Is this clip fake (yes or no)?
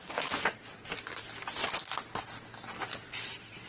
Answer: no